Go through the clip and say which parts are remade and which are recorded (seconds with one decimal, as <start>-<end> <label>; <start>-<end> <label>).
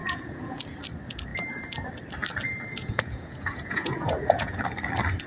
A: 0.0-0.6 remade; 0.6-2.7 recorded; 2.7-4.6 remade; 4.6-5.3 recorded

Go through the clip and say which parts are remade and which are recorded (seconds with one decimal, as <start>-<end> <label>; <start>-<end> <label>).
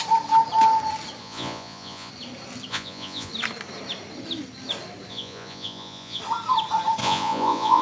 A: 0.0-1.2 recorded; 1.2-2.1 remade; 2.1-2.7 recorded; 2.7-3.3 remade; 3.3-5.1 recorded; 5.1-6.2 remade; 6.2-7.0 recorded; 7.0-7.8 remade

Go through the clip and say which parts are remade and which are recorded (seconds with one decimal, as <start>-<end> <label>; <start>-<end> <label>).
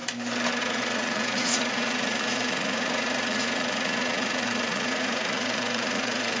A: 0.0-0.6 recorded; 0.6-6.4 remade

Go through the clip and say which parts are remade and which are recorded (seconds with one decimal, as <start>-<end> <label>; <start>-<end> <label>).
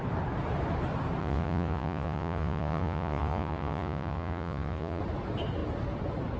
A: 0.0-1.2 recorded; 1.2-5.0 remade; 5.0-6.4 recorded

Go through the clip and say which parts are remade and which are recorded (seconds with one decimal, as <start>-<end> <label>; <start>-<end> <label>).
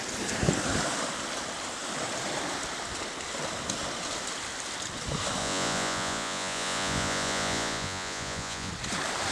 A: 0.0-5.4 recorded; 5.4-8.7 remade; 8.7-9.3 recorded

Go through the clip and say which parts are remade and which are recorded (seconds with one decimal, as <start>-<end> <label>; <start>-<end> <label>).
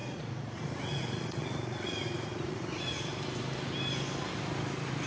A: 0.0-3.1 remade; 3.1-5.1 recorded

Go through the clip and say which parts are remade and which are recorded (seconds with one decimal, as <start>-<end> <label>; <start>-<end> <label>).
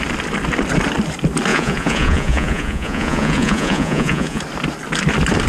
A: 0.0-1.5 recorded; 1.5-4.4 remade; 4.4-5.5 recorded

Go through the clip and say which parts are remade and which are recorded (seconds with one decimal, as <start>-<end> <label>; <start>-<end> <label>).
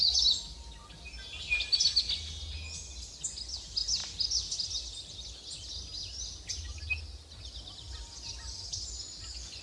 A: 0.0-9.6 recorded